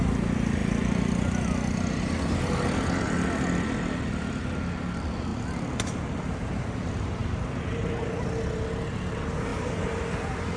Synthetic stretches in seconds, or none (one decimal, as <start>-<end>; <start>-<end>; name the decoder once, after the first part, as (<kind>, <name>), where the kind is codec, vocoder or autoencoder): none